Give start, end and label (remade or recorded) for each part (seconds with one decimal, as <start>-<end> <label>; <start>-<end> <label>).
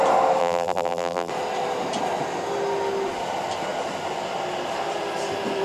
0.0-0.4 recorded; 0.4-1.3 remade; 1.3-5.6 recorded